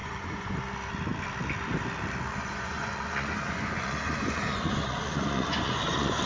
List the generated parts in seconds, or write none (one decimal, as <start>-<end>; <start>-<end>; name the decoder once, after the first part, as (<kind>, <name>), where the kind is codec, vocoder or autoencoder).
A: 0.0-0.6 (vocoder, Vocos); 2.3-6.3